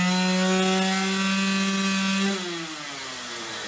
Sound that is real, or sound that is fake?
real